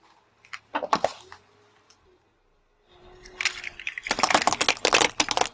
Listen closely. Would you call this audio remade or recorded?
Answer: recorded